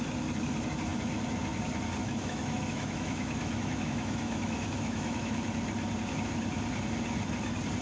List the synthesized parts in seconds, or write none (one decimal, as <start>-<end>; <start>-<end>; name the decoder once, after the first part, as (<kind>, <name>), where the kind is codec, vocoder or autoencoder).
2.0-5.3 (autoencoder, DAC-VAE)